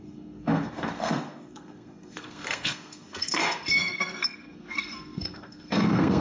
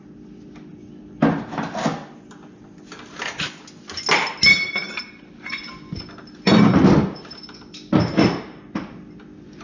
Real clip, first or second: second